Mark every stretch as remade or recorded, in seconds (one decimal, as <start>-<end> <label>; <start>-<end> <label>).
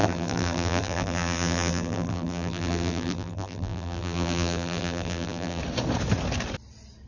0.0-5.6 remade; 5.6-7.1 recorded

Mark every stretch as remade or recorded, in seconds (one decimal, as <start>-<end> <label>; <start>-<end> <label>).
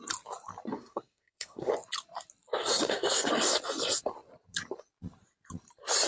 0.0-0.7 recorded; 0.7-1.7 remade; 1.7-2.7 recorded; 2.7-3.3 remade; 3.3-6.1 recorded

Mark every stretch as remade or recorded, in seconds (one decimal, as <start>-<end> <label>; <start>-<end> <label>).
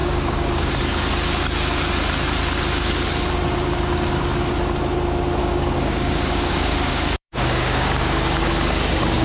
0.0-0.7 remade; 0.7-5.4 recorded; 5.4-8.5 remade; 8.5-9.2 recorded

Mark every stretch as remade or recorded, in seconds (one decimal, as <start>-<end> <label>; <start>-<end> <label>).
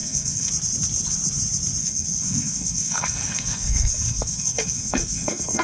0.0-0.5 remade; 0.5-1.8 recorded; 1.8-5.6 remade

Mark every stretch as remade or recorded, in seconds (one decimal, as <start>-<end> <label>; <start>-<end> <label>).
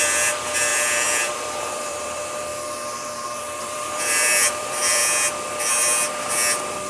0.0-2.5 remade; 2.5-3.1 recorded; 3.1-5.0 remade; 5.0-6.9 recorded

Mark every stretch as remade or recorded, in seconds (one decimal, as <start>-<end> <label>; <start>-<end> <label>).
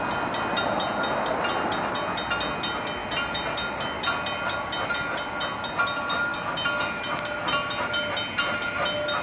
0.0-9.2 recorded